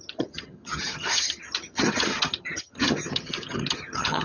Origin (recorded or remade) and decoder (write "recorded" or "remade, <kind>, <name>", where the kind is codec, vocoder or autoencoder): remade, vocoder, HiFi-GAN